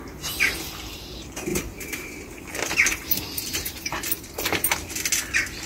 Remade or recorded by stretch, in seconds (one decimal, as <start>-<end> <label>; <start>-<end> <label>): 0.0-1.5 recorded; 1.5-4.9 remade; 4.9-5.7 recorded